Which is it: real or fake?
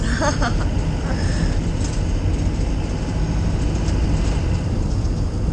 real